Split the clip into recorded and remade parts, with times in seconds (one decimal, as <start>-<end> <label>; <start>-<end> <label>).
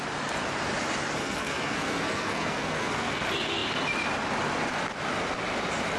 0.0-1.2 recorded; 1.2-3.2 remade; 3.2-6.0 recorded